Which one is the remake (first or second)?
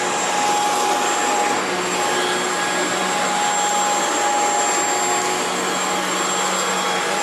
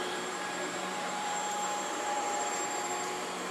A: second